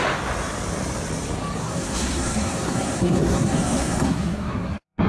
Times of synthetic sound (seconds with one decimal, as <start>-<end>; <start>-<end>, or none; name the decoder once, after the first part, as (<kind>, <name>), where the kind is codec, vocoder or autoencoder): 1.6-5.1 (codec, SNAC)